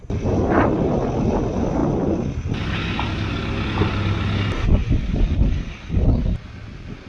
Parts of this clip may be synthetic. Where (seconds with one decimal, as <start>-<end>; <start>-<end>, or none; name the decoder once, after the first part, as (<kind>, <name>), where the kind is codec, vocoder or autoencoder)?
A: none